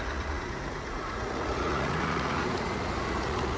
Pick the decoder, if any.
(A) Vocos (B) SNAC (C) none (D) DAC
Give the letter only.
A